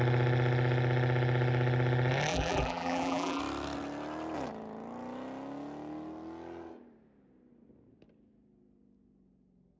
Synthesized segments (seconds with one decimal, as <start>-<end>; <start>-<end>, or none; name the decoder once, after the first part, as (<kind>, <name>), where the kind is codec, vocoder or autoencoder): 2.3-3.4 (vocoder, BigVGAN v2)